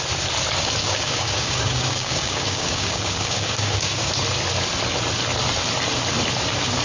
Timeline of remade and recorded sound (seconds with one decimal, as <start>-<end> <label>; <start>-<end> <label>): 0.0-0.8 recorded; 0.8-4.1 remade; 4.1-6.8 recorded